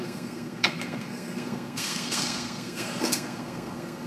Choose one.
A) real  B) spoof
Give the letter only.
B